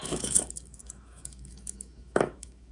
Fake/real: fake